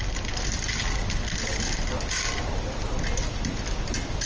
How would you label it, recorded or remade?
recorded